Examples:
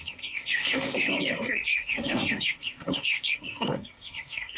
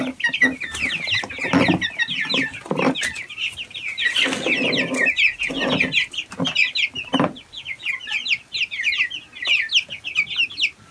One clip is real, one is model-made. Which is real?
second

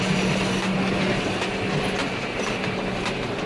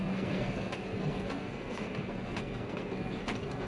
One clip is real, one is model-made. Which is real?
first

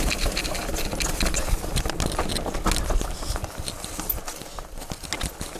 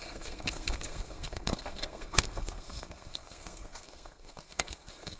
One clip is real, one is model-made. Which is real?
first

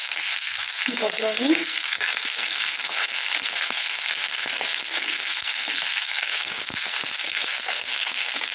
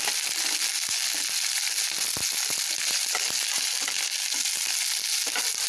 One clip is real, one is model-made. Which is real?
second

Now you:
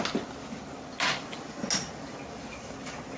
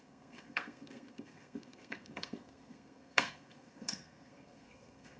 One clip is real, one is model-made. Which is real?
first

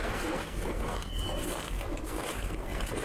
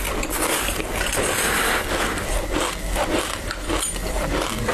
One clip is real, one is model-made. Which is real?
second